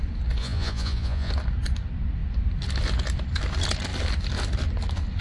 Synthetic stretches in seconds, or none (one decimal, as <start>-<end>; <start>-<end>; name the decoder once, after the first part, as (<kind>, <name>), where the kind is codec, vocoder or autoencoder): 0.4-1.3 (vocoder, Vocos)

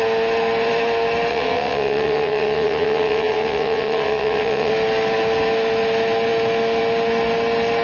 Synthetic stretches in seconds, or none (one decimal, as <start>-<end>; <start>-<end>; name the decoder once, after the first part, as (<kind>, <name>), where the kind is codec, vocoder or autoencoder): 1.3-4.7 (vocoder, WaveNeXt)

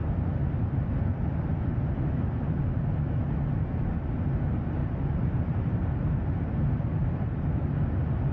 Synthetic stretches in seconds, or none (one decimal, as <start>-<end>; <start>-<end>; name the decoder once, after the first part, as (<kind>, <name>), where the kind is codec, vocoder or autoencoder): 0.0-1.6 (vocoder, BigVGAN v2); 4.8-6.5; 7.0-7.6

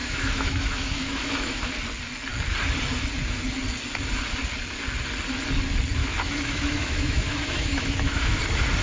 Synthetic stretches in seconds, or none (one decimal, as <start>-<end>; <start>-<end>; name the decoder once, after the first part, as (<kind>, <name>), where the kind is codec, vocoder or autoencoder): 0.0-1.7 (autoencoder, DAC-VAE); 6.0-8.4